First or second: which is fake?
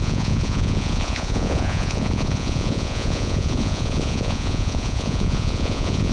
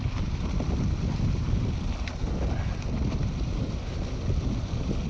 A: first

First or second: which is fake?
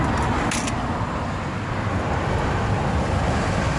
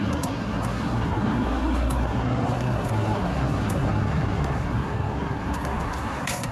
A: second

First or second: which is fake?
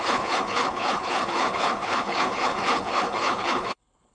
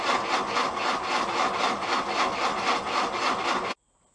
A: first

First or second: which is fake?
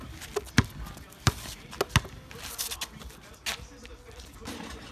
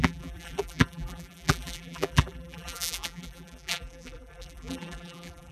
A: second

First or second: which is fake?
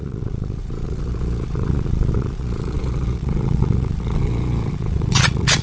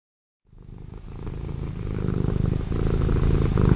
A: first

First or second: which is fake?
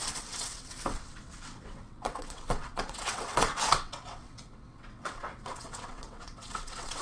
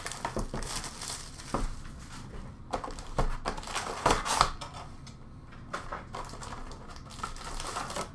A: first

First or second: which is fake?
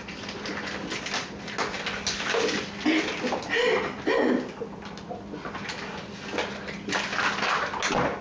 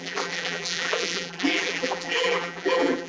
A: second